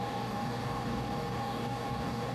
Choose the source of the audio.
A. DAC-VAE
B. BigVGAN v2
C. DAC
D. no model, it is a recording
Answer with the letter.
C